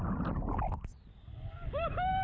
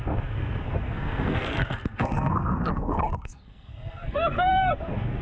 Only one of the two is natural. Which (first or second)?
first